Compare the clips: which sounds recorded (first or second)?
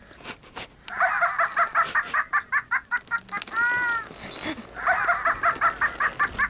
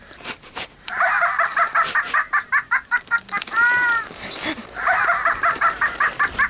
first